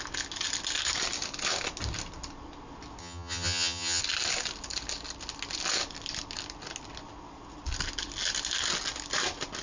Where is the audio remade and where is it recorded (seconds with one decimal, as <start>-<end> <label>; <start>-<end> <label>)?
0.0-3.0 recorded; 3.0-4.0 remade; 4.0-9.6 recorded